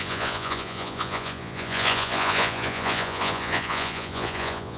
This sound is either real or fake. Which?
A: fake